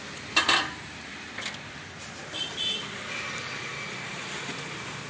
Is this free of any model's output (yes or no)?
yes